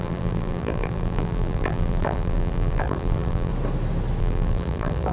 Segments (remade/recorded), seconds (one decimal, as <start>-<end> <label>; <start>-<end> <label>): 0.0-3.5 remade; 3.5-4.2 recorded; 4.2-5.1 remade